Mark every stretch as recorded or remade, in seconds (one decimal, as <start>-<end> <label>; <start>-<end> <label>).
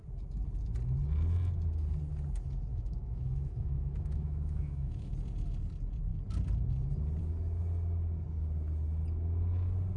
0.0-2.7 recorded; 2.7-5.1 remade; 5.1-10.0 recorded